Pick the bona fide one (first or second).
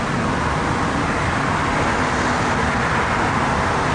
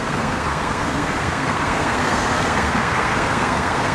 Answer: first